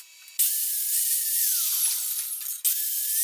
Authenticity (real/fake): real